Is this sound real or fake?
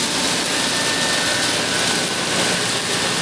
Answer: real